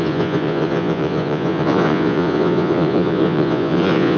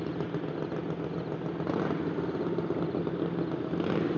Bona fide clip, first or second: second